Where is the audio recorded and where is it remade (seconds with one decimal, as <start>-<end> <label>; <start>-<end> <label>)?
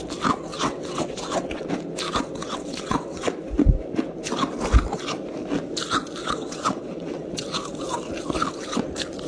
0.0-0.5 recorded; 0.5-1.7 remade; 1.7-2.4 recorded; 2.4-3.2 remade; 3.2-6.2 recorded; 6.2-7.3 remade; 7.3-9.3 recorded